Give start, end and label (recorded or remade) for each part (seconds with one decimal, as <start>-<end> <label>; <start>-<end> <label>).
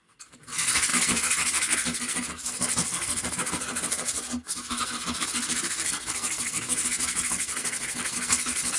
0.0-8.8 remade